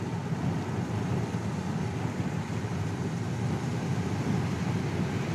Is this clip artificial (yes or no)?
no